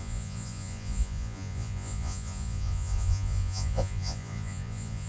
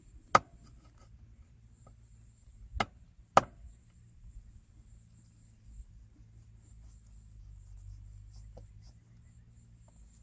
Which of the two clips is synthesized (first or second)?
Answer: first